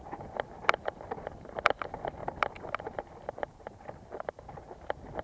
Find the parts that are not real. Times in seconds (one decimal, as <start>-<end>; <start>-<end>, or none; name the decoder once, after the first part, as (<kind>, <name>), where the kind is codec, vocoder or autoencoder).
2.2-2.8 (vocoder, BigVGAN v2); 3.5-4.3